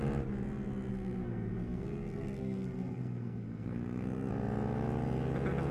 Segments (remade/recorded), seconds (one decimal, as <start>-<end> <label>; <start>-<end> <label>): 0.0-0.9 recorded; 0.9-4.3 remade; 4.3-5.7 recorded